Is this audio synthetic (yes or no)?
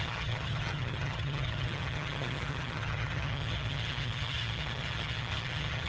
yes